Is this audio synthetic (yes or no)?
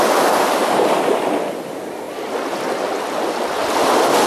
no